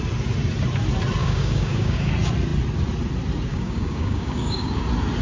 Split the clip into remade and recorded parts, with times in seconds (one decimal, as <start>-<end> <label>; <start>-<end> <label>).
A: 0.0-1.2 recorded; 1.2-2.1 remade; 2.1-3.5 recorded; 3.5-4.8 remade; 4.8-5.2 recorded